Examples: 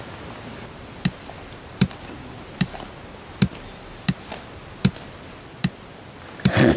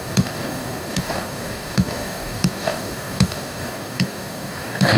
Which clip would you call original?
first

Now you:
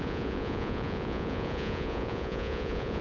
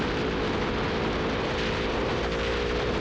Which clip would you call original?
second